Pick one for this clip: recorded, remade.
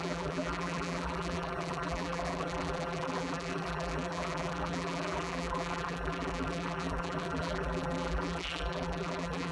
remade